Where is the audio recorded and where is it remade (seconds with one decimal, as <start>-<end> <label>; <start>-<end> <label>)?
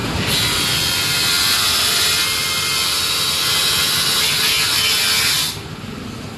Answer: 0.0-6.4 recorded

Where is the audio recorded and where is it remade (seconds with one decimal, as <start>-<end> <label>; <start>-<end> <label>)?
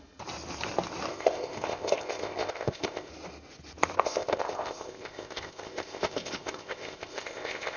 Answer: 0.0-1.1 recorded; 1.1-3.1 remade; 3.1-4.0 recorded; 4.0-7.8 remade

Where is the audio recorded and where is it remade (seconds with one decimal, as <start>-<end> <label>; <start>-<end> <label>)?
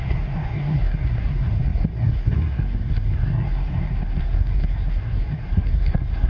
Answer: 0.0-6.3 remade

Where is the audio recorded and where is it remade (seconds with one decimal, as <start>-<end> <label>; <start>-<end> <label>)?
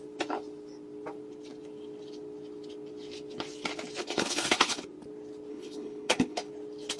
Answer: 0.0-4.0 recorded; 4.0-4.8 remade; 4.8-5.5 recorded; 5.5-6.5 remade; 6.5-7.0 recorded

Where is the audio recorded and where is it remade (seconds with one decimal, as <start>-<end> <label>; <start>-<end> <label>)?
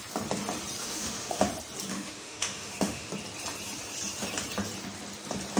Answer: 0.0-0.8 recorded; 0.8-1.4 remade; 1.4-1.9 recorded; 1.9-3.1 remade; 3.1-5.6 recorded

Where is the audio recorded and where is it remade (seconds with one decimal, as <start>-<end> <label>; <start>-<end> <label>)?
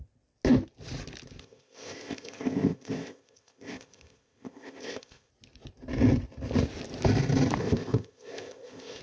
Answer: 0.0-1.4 recorded; 1.4-5.3 remade; 5.3-7.6 recorded; 7.6-9.0 remade